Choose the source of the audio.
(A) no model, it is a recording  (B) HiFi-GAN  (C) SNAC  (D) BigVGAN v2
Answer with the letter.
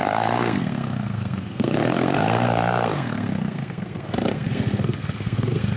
C